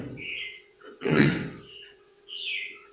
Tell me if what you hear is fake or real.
fake